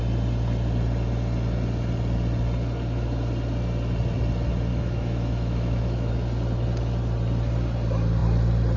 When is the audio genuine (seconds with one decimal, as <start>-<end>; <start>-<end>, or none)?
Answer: 0.0-4.7; 6.1-8.8